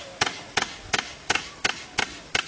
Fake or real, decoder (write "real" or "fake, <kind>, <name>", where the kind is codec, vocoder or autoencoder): real